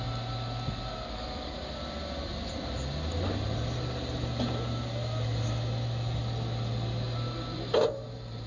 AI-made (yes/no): no